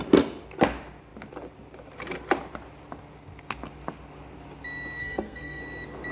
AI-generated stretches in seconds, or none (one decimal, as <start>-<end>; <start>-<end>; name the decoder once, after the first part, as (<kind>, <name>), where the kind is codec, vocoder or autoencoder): 5.0-5.6 (codec, SNAC)